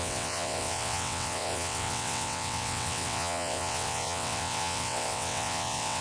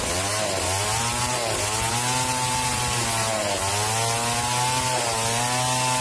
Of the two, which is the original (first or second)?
second